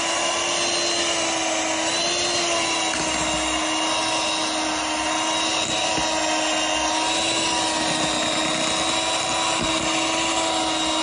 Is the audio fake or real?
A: real